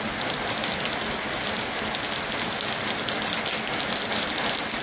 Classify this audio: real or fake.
real